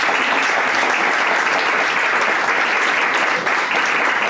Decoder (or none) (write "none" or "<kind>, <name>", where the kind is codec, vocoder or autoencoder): none